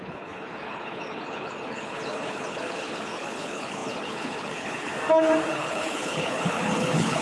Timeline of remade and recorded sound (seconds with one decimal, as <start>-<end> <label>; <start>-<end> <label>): 0.0-4.9 remade; 4.9-5.5 recorded; 5.5-7.2 remade